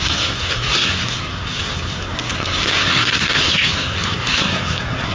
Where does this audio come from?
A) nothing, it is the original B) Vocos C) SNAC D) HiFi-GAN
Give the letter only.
C